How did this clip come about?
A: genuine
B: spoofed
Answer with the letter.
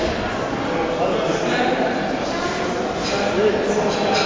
A